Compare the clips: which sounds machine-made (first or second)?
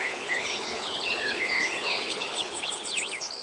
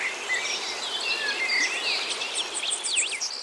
first